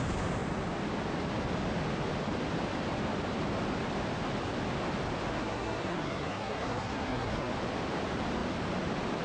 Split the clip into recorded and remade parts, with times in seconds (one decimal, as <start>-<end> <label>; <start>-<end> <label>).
0.0-5.3 recorded; 5.3-7.5 remade; 7.5-9.2 recorded

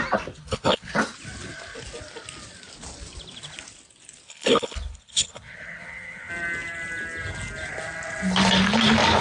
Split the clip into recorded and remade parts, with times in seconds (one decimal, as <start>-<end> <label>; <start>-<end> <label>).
0.0-0.4 recorded; 0.4-1.0 remade; 1.0-4.3 recorded; 4.3-6.3 remade; 6.3-9.2 recorded